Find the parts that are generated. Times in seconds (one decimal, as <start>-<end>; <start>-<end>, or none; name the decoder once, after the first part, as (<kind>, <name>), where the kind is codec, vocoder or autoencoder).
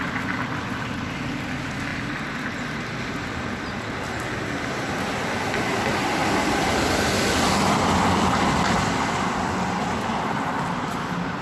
none